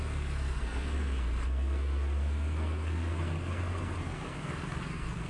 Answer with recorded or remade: remade